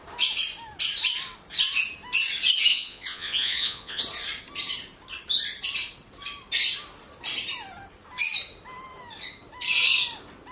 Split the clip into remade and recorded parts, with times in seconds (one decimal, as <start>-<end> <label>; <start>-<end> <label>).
0.0-2.7 recorded; 2.7-4.0 remade; 4.0-10.5 recorded